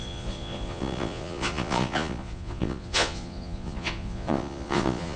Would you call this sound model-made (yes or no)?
yes